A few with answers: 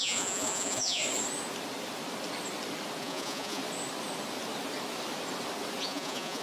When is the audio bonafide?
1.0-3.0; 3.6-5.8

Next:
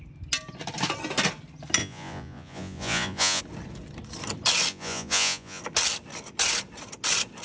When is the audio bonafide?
0.0-1.8; 3.4-4.7; 5.6-7.4